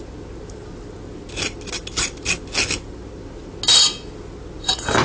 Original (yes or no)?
yes